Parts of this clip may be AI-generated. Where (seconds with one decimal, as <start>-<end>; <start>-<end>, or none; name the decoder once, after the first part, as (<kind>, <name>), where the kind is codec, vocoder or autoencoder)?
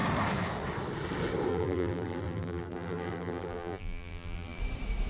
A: 1.5-4.6 (vocoder, BigVGAN v2)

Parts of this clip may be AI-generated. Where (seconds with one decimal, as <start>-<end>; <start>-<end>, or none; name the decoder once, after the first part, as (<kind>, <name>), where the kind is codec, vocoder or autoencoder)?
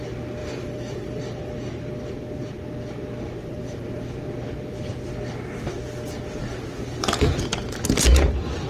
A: 0.4-1.2 (vocoder, BigVGAN v2); 3.4-4.1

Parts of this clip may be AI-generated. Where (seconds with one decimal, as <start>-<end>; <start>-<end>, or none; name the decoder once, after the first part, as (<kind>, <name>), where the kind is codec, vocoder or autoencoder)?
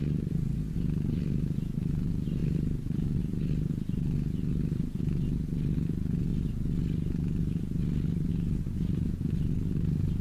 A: 2.4-3.2 (vocoder, BigVGAN v2)